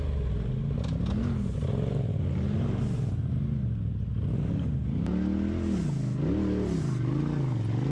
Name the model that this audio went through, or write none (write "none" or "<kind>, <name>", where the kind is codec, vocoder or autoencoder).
none